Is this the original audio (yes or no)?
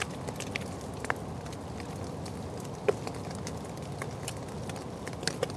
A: yes